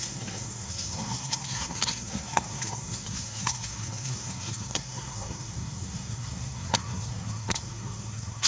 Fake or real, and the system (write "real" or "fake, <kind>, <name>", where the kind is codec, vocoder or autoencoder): fake, codec, SNAC